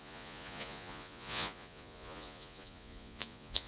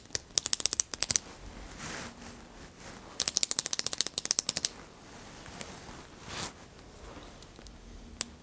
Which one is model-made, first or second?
first